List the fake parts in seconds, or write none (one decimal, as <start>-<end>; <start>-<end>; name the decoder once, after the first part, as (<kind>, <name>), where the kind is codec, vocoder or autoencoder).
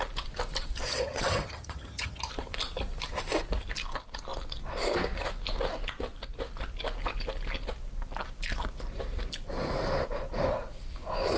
0.9-2.3 (vocoder, HiFi-GAN)